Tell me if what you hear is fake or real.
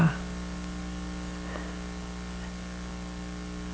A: real